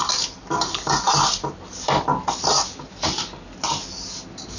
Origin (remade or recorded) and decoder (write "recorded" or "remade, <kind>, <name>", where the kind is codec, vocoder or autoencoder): recorded